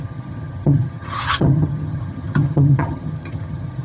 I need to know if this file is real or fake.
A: fake